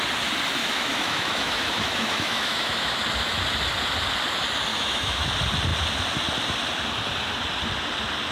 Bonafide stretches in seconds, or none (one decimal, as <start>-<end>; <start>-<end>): 0.0-0.6; 3.0-4.7; 5.3-8.3